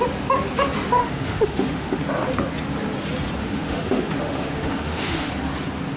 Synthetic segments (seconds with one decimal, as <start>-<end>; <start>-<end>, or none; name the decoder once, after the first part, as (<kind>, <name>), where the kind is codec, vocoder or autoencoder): 1.0-2.0 (autoencoder, DAC-VAE); 3.4-5.3